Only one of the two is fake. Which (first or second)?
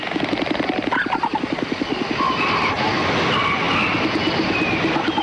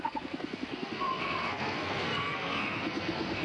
second